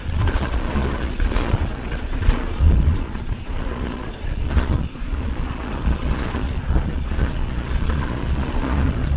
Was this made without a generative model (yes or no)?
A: no